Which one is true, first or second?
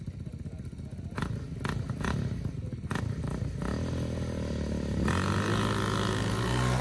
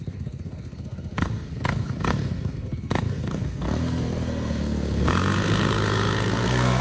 first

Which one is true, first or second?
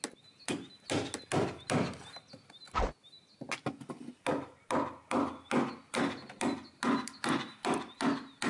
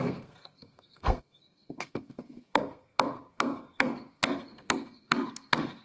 first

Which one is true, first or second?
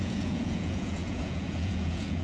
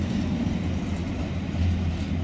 second